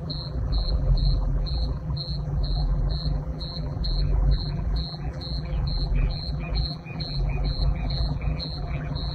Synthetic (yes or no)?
yes